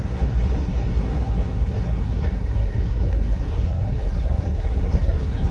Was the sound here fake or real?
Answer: fake